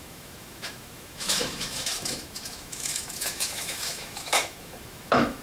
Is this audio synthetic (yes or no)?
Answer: yes